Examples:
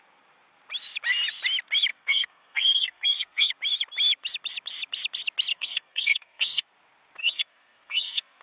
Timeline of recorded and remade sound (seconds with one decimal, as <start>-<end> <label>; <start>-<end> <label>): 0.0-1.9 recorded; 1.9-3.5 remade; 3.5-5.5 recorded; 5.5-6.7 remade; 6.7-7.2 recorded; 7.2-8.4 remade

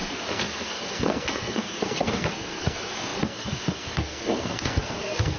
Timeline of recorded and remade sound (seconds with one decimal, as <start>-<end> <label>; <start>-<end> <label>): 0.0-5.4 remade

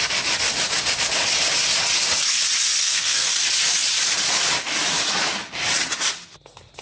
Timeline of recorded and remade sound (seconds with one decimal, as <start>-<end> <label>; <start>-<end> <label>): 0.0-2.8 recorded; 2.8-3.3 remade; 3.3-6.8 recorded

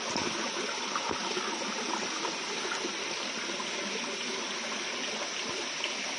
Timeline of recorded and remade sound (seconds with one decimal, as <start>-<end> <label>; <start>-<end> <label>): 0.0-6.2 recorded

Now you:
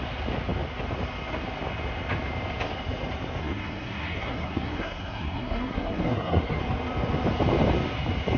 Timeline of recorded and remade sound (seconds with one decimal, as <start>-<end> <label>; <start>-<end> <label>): 0.0-3.4 recorded; 3.4-6.6 remade; 6.6-8.4 recorded